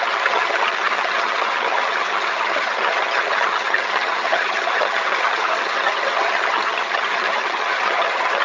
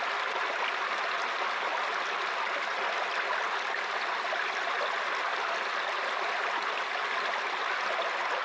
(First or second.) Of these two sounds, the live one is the second